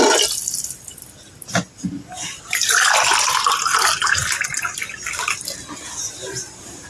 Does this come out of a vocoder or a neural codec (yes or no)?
no